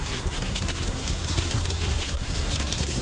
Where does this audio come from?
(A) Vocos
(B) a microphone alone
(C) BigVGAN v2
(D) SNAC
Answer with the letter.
D